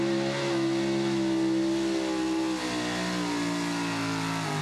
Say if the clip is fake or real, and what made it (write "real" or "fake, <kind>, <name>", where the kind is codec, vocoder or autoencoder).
real